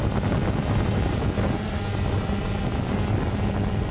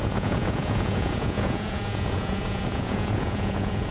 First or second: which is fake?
second